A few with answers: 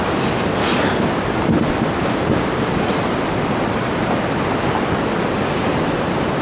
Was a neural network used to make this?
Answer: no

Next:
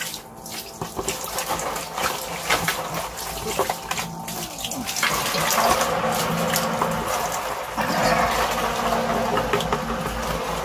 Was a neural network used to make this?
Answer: no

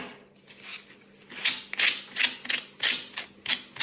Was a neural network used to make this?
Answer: no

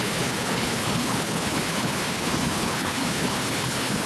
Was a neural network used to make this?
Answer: yes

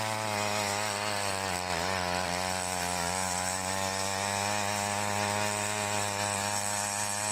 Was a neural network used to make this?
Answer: no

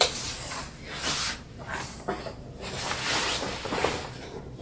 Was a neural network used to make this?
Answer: no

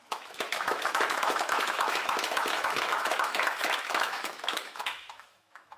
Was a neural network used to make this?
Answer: yes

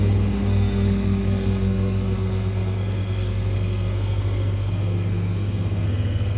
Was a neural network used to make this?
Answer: yes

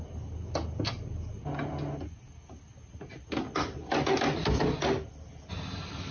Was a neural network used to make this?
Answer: no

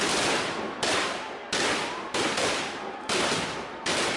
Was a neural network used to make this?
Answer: yes